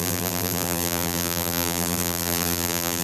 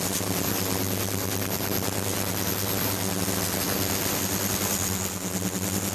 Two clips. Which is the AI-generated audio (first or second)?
first